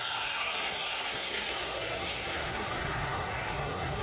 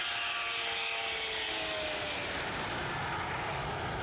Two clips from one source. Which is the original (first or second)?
second